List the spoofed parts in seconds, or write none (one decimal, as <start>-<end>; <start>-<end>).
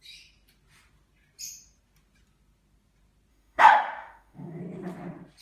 3.3-4.6